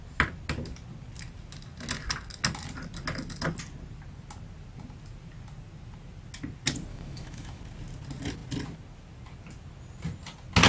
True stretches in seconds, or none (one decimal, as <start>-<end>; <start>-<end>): 0.0-6.9; 7.6-10.7